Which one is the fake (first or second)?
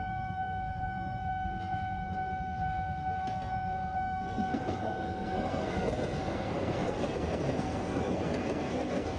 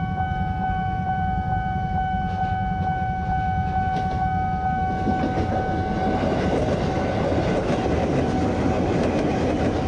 first